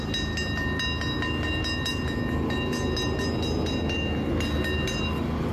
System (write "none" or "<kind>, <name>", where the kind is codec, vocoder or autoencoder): none